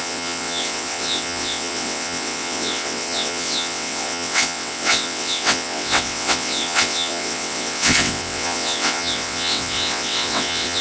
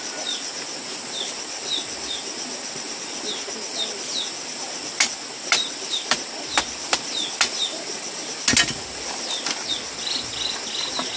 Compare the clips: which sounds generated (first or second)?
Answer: first